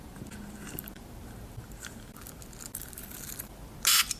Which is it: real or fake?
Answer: real